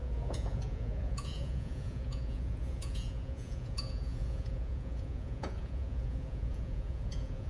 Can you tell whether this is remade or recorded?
remade